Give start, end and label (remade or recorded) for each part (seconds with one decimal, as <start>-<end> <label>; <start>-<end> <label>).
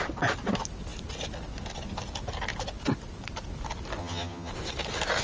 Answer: 0.0-4.0 recorded; 4.0-4.5 remade; 4.5-5.2 recorded